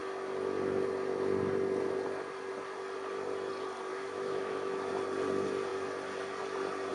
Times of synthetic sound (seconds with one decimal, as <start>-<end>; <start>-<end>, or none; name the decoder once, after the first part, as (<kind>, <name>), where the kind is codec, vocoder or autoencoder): 3.9-4.9 (autoencoder, DAC-VAE)